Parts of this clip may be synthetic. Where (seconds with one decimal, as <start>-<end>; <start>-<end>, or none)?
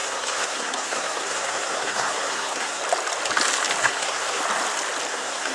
0.0-2.8; 3.8-4.4; 5.1-5.5